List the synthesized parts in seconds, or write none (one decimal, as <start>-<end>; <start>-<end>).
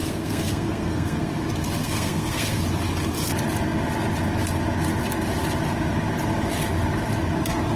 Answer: 0.0-1.3; 1.8-2.6